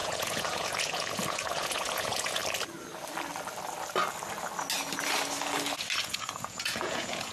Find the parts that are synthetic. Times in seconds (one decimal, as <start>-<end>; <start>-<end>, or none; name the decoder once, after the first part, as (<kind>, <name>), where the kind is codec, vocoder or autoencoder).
0.0-2.4 (vocoder, Vocos); 6.0-7.3